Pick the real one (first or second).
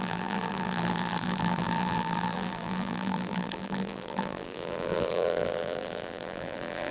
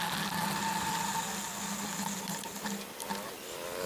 second